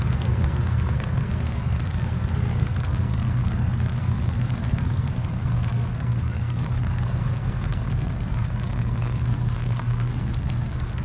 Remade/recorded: remade